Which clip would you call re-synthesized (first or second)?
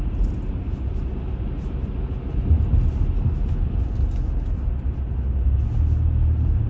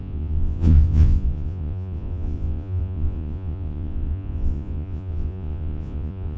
second